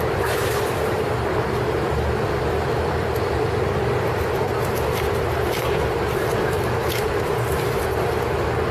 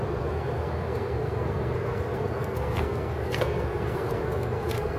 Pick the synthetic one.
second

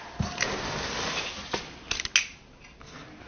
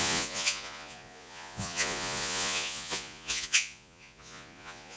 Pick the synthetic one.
second